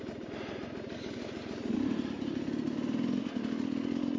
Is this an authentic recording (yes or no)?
yes